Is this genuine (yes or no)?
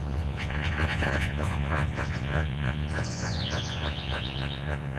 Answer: no